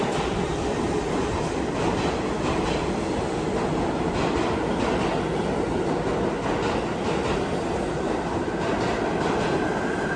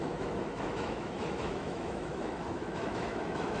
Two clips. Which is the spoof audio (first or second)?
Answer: second